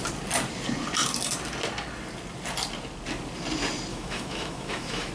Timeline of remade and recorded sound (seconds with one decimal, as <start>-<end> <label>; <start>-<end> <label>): 0.0-3.9 recorded; 3.9-5.1 remade